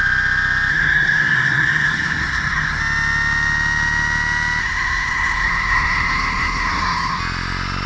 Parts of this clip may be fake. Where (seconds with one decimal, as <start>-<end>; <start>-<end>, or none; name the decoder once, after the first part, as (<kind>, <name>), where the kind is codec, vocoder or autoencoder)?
0.7-2.8 (codec, SNAC); 4.6-7.2